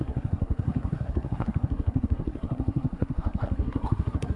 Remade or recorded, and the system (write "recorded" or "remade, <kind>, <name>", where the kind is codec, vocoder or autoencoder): remade, codec, SNAC